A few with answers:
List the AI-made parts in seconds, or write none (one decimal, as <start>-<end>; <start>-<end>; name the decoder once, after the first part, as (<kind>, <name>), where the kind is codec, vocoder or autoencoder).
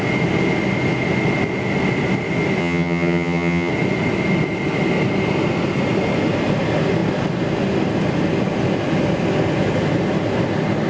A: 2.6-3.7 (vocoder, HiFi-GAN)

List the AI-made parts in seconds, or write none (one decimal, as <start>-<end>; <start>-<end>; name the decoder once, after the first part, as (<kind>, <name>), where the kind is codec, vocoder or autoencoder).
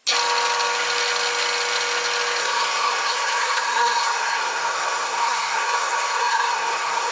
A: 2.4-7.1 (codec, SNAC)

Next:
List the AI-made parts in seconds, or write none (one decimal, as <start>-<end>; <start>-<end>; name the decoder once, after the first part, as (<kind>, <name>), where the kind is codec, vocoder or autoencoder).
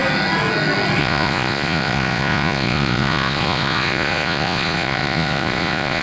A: 1.0-6.0 (vocoder, Vocos)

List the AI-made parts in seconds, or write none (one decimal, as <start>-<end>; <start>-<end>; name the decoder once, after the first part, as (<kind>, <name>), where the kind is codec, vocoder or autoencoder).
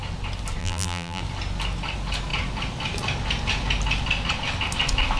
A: 0.6-1.2 (vocoder, BigVGAN v2)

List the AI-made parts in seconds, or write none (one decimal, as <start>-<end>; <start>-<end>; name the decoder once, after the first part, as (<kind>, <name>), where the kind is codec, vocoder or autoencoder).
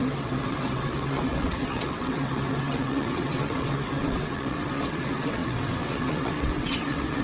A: 0.0-7.2 (vocoder, WaveNeXt)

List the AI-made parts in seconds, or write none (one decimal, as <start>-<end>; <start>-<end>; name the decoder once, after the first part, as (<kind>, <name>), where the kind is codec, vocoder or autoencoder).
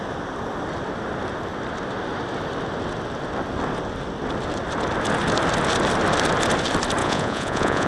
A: 7.0-7.9 (vocoder, Vocos)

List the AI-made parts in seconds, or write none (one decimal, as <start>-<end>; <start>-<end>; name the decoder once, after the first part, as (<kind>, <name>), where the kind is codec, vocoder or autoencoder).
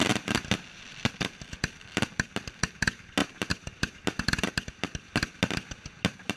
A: none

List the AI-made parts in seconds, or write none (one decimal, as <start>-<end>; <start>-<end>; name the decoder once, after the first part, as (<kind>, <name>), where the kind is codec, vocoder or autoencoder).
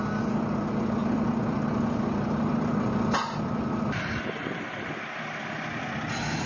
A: 1.0-4.9 (vocoder, BigVGAN v2)